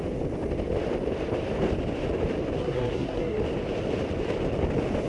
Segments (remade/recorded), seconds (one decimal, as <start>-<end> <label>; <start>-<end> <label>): 0.0-2.6 recorded; 2.6-3.4 remade; 3.4-5.1 recorded

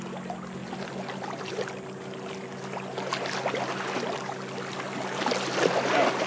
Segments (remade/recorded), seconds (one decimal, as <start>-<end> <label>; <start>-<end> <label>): 0.0-6.3 recorded

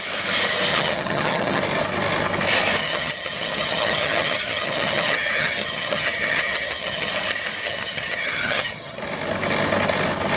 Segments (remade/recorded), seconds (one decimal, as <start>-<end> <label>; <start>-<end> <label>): 0.0-0.7 recorded; 0.7-1.6 remade; 1.6-2.8 recorded; 2.8-7.1 remade; 7.1-7.6 recorded; 7.6-9.0 remade; 9.0-10.4 recorded

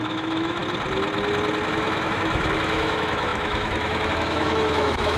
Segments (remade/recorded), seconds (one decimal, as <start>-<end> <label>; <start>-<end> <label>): 0.0-0.6 remade; 0.6-1.7 recorded; 1.7-5.2 remade